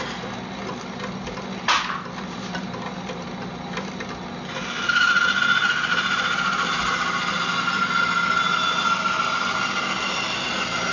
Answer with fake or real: real